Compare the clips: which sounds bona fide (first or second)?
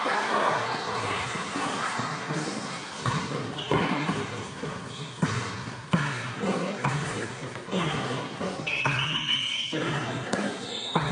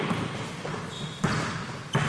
second